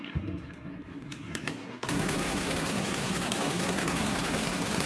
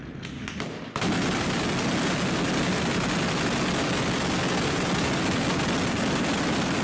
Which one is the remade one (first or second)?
first